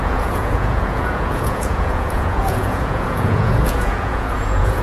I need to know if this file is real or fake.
fake